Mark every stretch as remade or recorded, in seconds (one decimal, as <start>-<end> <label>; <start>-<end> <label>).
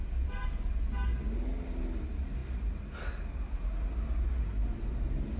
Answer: 0.0-5.4 recorded